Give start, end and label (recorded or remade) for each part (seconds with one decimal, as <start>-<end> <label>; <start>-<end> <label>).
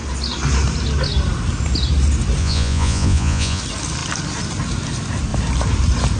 0.0-2.4 recorded; 2.4-3.6 remade; 3.6-6.2 recorded